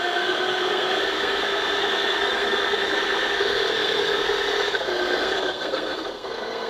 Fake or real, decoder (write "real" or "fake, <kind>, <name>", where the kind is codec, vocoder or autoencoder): fake, codec, SNAC